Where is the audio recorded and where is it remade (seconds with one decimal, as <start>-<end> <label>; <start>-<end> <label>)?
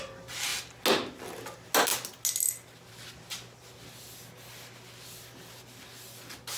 0.0-6.6 recorded